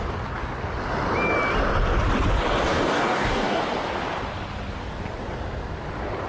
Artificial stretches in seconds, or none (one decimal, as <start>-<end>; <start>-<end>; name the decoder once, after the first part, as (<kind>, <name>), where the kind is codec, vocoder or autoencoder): 2.7-3.6 (codec, DAC)